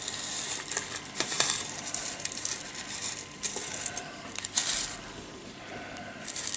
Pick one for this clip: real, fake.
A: real